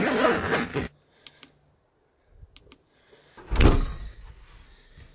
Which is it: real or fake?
real